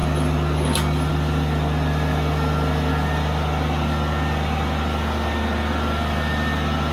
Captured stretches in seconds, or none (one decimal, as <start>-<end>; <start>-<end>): 0.0-6.9